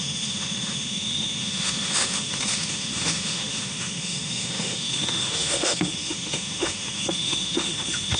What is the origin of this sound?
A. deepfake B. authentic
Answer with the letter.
A